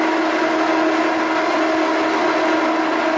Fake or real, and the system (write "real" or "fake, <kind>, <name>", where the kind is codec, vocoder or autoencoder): real